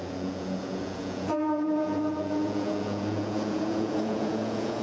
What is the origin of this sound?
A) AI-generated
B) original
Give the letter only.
A